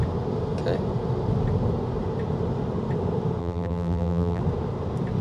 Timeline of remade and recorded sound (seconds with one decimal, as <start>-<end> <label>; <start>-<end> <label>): 0.0-3.4 recorded; 3.4-4.4 remade; 4.4-5.2 recorded